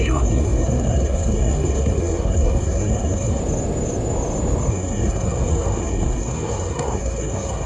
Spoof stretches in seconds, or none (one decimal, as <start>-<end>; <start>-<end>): 0.0-3.4; 4.7-7.7